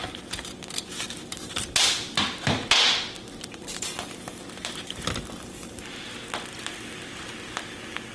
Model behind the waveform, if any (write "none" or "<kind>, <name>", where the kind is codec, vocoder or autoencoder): none